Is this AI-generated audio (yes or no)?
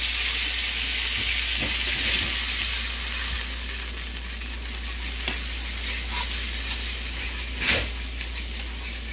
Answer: no